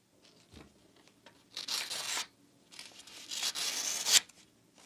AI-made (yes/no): no